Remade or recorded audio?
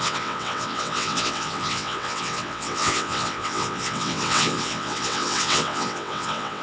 remade